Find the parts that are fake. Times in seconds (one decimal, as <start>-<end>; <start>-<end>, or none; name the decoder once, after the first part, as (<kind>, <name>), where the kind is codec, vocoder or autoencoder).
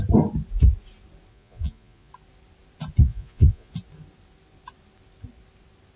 1.3-2.1 (vocoder, Vocos); 3.0-3.7